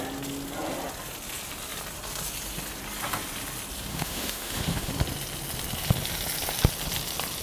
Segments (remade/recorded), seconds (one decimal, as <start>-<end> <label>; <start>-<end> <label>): 0.0-3.9 recorded; 3.9-4.9 remade; 4.9-7.4 recorded